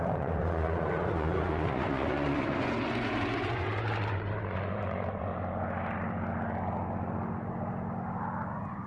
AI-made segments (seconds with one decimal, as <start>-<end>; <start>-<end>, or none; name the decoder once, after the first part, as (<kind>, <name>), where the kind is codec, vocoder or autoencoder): 0.0-5.3 (vocoder, Vocos); 8.5-8.9